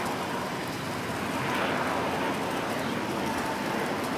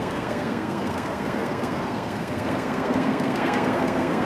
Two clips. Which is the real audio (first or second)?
first